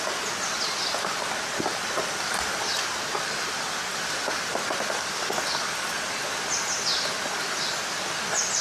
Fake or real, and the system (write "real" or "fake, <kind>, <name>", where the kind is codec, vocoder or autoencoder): real